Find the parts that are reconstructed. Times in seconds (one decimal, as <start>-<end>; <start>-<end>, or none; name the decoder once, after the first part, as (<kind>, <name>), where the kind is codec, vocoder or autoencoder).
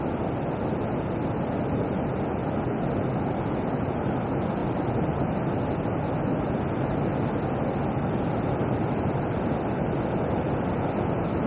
none